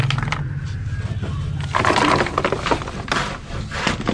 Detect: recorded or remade recorded